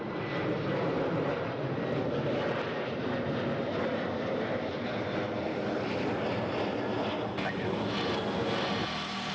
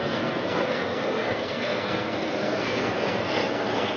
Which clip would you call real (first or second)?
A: first